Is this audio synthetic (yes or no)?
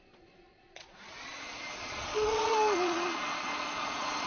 yes